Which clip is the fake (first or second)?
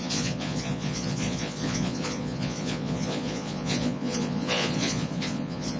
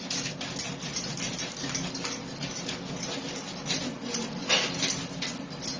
first